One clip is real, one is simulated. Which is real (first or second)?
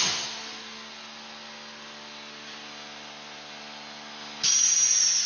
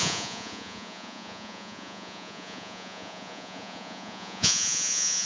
first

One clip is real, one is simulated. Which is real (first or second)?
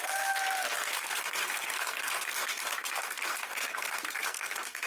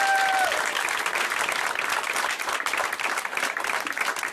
second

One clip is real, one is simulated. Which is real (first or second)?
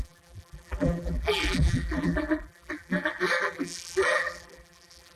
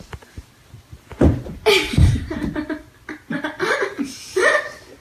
second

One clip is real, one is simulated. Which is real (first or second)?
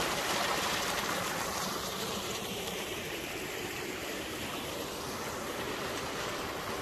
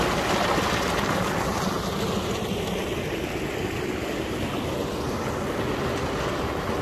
second